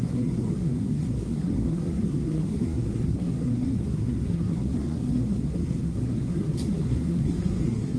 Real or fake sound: fake